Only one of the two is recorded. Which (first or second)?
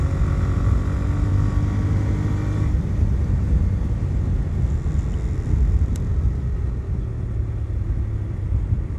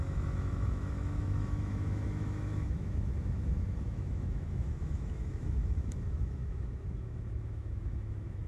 first